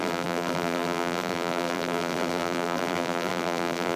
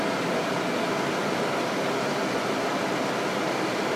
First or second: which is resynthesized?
first